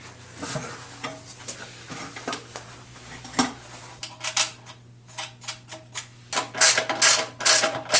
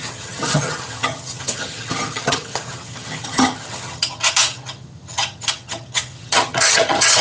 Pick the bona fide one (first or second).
first